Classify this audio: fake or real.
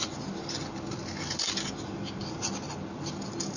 real